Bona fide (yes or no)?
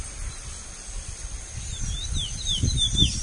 yes